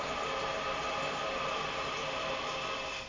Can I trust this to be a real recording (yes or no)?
yes